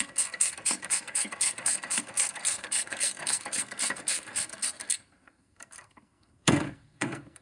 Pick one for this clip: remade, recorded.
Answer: remade